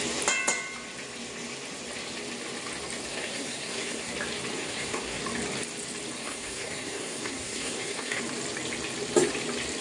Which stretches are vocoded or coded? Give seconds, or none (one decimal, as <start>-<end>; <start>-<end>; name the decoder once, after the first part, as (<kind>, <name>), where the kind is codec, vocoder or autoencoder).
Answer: 3.1-4.1 (codec, SNAC); 4.5-5.2; 6.2-8.2